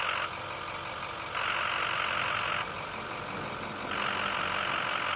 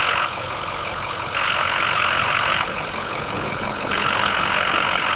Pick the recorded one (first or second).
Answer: first